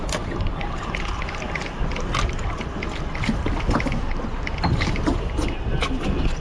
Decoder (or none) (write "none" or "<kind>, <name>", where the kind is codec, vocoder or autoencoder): none